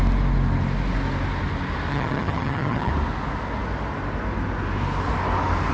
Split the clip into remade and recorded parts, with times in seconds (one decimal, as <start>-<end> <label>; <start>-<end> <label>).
0.0-1.9 recorded; 1.9-2.9 remade; 2.9-5.7 recorded